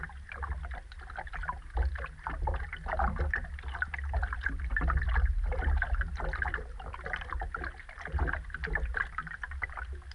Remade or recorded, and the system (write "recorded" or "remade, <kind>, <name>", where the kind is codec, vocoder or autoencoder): recorded